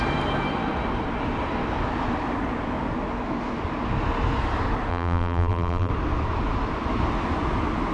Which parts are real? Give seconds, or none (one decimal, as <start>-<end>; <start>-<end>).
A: 0.0-4.9; 5.9-7.9